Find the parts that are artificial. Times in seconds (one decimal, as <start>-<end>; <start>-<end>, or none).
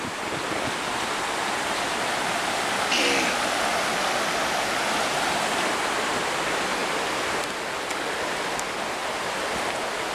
none